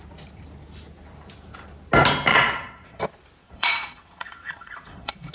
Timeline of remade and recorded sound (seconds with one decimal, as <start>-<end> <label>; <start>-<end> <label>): 0.0-2.3 recorded; 2.3-3.0 remade; 3.0-3.4 recorded; 3.4-5.3 remade

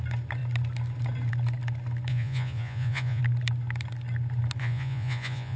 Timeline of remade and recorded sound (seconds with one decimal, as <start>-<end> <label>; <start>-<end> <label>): 0.0-2.1 recorded; 2.1-3.2 remade; 3.2-4.6 recorded; 4.6-5.6 remade

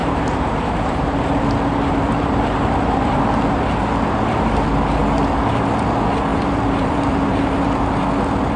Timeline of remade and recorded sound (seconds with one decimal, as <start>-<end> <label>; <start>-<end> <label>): 0.0-3.2 remade; 3.2-6.3 recorded; 6.3-8.0 remade; 8.0-8.6 recorded

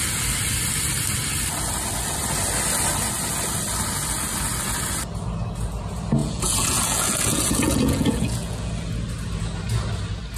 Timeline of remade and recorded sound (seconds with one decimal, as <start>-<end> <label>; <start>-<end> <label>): 0.0-6.2 recorded; 6.2-8.7 remade; 8.7-10.4 recorded

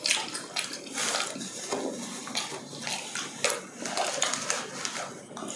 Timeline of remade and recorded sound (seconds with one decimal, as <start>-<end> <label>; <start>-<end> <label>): 0.0-5.6 recorded

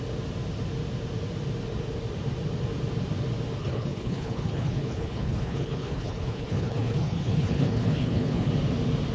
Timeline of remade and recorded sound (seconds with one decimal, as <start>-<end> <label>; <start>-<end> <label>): 0.0-3.6 recorded; 3.6-8.5 remade; 8.5-9.1 recorded

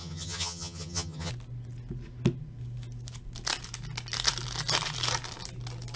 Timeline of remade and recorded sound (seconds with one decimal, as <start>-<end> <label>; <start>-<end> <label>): 0.0-1.3 remade; 1.3-6.0 recorded

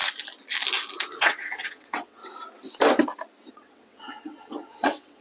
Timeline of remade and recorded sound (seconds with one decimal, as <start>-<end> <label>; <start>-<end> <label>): 0.0-1.1 recorded; 1.1-2.2 remade; 2.2-3.5 recorded; 3.5-5.2 remade